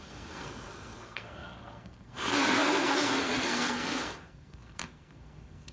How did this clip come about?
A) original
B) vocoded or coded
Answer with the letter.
B